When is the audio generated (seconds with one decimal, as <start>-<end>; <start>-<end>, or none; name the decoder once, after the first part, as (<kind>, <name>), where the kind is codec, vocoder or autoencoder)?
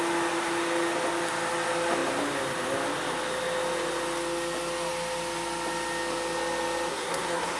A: 6.9-7.6 (codec, SNAC)